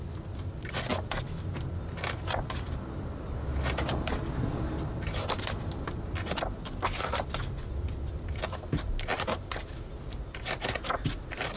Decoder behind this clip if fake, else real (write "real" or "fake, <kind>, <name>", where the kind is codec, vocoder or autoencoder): real